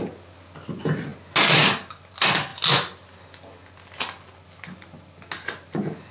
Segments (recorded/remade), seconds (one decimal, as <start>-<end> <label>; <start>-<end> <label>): 0.0-6.1 recorded